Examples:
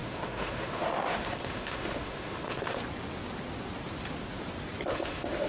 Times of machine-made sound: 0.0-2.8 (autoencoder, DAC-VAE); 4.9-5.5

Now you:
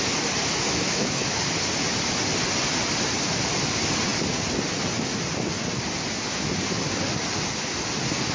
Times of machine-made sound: 0.4-1.4 (autoencoder, DAC-VAE)

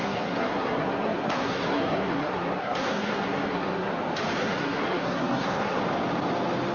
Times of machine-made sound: 0.0-3.9 (codec, SNAC); 4.4-5.8

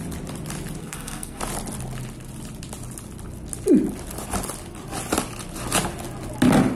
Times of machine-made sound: 0.8-1.4 (codec, SNAC)

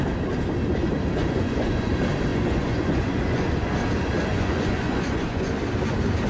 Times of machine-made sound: 1.2-1.9 (vocoder, Vocos); 2.3-3.7; 4.3-5.5

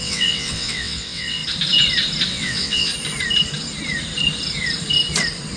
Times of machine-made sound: 0.0-1.4 (vocoder, WaveNeXt); 2.3-2.9

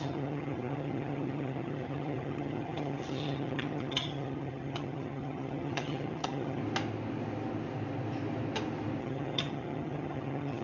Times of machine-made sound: 0.0-6.6 (vocoder, HiFi-GAN); 9.0-10.6

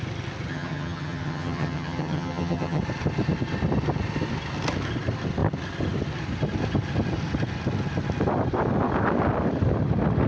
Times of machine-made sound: 0.5-2.8 (vocoder, HiFi-GAN)